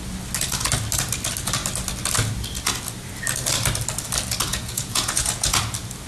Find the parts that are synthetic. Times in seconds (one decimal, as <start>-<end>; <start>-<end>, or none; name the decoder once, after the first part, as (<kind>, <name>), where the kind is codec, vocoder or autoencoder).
4.5-5.6 (vocoder, Vocos)